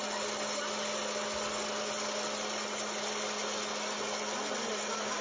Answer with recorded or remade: recorded